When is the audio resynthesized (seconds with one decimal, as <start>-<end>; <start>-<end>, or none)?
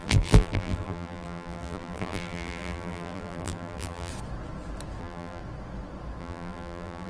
0.0-4.1; 5.0-5.4; 6.2-7.1